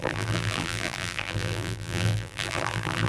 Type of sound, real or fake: fake